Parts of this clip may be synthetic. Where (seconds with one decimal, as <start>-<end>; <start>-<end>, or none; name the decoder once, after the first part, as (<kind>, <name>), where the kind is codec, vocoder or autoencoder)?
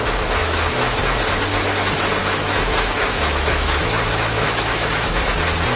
0.4-1.0 (autoencoder, DAC-VAE); 2.2-5.2